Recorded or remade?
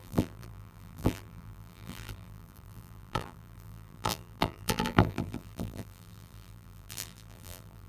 remade